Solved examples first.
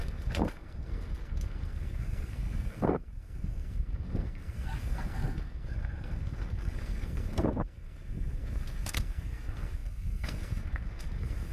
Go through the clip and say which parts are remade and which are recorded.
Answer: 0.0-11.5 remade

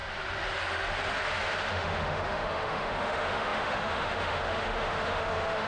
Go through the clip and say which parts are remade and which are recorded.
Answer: 0.0-1.7 recorded; 1.7-5.7 remade

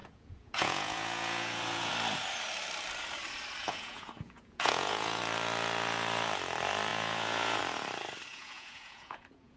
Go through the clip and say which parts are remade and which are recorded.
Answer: 0.0-1.9 remade; 1.9-3.6 recorded; 3.6-5.2 remade; 5.2-6.9 recorded; 6.9-7.6 remade; 7.6-8.3 recorded; 8.3-9.6 remade

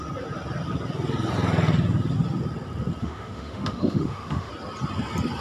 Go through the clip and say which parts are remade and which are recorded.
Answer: 0.0-3.0 recorded; 3.0-4.5 remade; 4.5-5.4 recorded

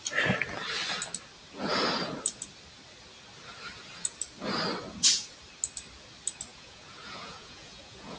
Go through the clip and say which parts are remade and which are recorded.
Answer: 0.0-6.5 recorded; 6.5-8.2 remade

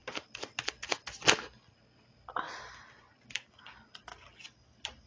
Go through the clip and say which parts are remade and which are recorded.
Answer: 0.0-5.1 recorded